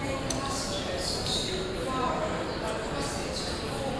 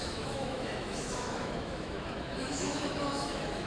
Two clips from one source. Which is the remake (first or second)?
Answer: second